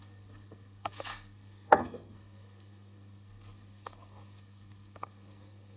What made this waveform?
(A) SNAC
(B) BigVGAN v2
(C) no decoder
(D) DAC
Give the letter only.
A